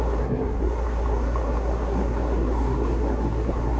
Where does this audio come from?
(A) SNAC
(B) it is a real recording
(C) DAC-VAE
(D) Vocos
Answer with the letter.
A